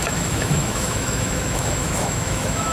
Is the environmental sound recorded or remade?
remade